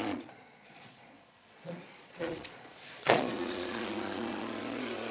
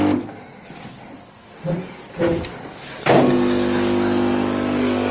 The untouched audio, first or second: second